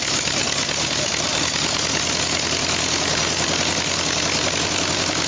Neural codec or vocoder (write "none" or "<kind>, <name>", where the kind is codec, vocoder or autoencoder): none